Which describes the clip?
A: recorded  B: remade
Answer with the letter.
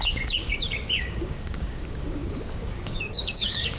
B